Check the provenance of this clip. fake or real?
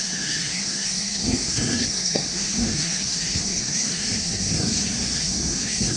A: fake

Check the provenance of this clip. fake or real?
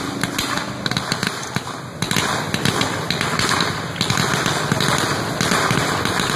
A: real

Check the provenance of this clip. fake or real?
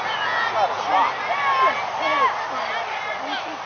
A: real